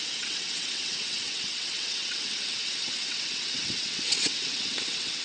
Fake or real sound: fake